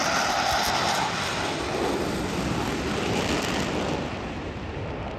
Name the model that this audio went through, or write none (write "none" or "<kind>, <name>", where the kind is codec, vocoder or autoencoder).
vocoder, BigVGAN v2